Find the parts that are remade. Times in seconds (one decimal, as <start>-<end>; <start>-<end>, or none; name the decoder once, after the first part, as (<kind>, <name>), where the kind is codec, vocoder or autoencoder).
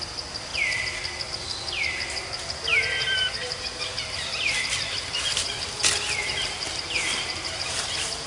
2.7-4.6 (vocoder, BigVGAN v2); 5.3-8.3